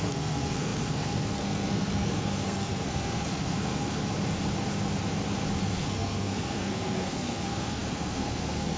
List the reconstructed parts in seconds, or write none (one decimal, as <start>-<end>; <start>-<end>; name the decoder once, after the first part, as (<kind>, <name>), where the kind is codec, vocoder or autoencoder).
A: 0.0-4.0 (codec, SNAC); 5.6-8.8